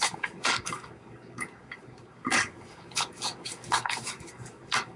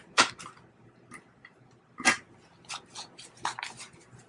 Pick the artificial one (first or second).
first